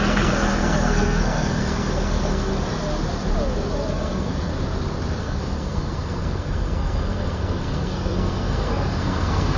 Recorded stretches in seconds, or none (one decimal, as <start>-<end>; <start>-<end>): 2.5-3.9; 4.5-5.2